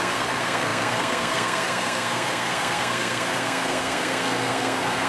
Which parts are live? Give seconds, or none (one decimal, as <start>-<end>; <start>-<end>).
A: none